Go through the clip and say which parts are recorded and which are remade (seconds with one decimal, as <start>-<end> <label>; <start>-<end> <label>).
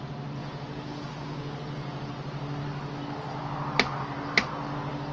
0.0-0.4 recorded; 0.4-2.1 remade; 2.1-5.1 recorded